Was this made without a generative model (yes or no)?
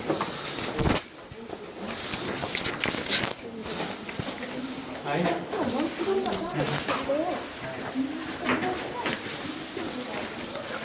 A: yes